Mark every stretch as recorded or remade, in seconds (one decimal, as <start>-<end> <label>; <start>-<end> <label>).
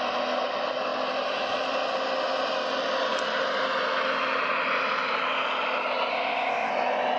0.0-6.1 recorded; 6.1-6.7 remade; 6.7-7.2 recorded